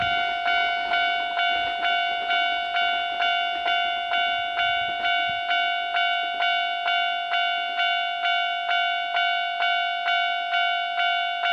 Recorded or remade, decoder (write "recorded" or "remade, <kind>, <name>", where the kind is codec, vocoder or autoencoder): recorded